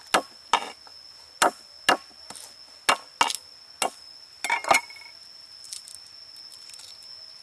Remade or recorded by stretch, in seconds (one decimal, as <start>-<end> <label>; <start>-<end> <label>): 0.0-7.4 recorded